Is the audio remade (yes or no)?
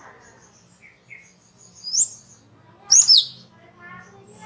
no